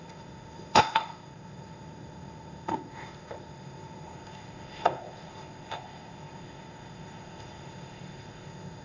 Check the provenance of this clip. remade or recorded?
remade